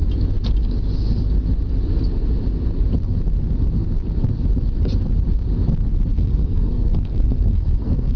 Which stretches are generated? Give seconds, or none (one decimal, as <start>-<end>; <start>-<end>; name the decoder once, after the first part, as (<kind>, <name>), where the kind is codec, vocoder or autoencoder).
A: 6.1-8.2 (codec, SNAC)